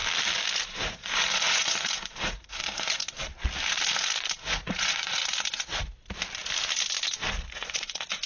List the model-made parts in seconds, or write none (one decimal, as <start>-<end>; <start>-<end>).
0.6-3.0; 4.3-5.2; 7.5-8.3